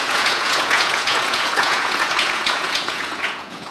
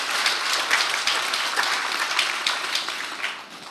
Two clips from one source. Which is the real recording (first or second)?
second